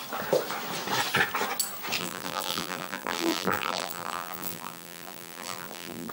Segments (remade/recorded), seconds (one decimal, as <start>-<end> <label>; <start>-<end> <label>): 0.0-2.0 recorded; 2.0-6.1 remade